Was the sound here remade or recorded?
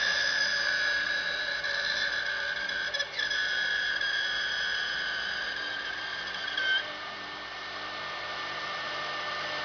remade